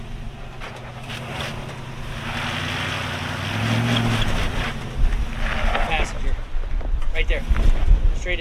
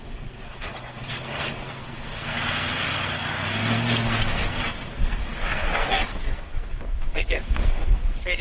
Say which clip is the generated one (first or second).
second